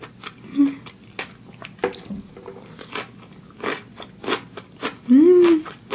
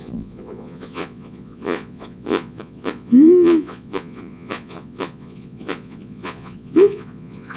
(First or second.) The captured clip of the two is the first